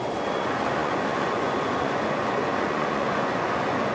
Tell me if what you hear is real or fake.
fake